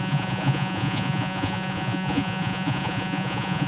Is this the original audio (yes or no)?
no